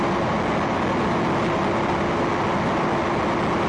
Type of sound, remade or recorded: recorded